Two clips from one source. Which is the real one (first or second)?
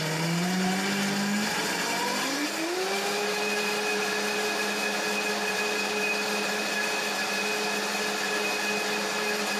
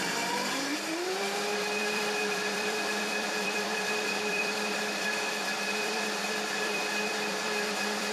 first